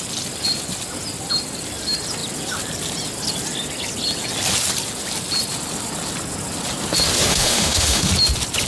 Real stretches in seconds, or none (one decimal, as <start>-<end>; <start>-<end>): 0.0-7.3; 8.1-8.7